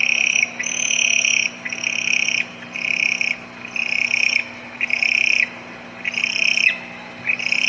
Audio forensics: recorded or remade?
recorded